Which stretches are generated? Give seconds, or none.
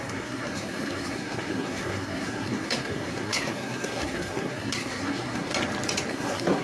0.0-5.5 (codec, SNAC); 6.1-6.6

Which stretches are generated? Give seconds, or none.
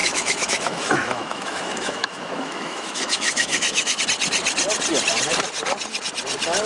0.0-4.0 (autoencoder, DAC-VAE)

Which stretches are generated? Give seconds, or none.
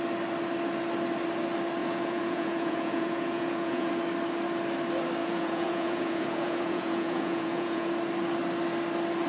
1.8-3.9 (vocoder, Vocos); 5.2-7.9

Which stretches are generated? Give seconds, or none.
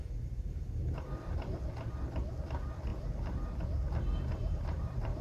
4.4-5.2 (vocoder, BigVGAN v2)